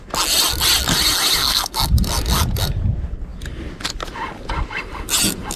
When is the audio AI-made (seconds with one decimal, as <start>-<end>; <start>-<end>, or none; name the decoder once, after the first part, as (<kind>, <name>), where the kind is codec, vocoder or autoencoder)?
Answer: 1.4-1.9 (codec, SNAC)